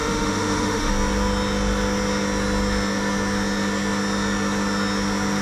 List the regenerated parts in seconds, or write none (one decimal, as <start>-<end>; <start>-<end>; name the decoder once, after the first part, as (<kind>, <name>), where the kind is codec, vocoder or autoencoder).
0.0-0.9 (autoencoder, DAC-VAE)